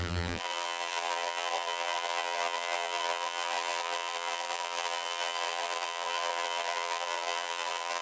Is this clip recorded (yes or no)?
no